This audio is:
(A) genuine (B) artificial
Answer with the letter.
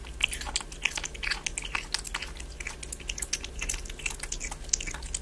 A